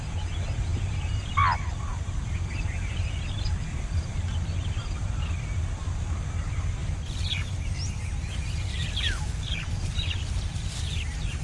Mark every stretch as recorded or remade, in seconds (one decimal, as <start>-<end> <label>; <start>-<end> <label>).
0.0-0.7 recorded; 0.7-1.3 remade; 1.3-1.9 recorded; 1.9-3.2 remade; 3.2-3.7 recorded; 3.7-6.3 remade; 6.3-6.8 recorded; 6.8-7.7 remade; 7.7-11.4 recorded